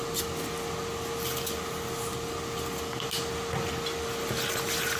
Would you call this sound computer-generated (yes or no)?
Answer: no